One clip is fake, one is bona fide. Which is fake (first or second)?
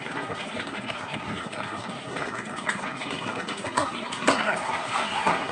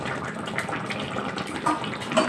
first